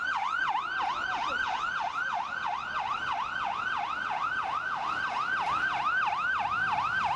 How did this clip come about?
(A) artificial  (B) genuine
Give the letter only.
B